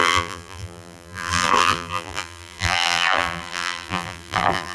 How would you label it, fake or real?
fake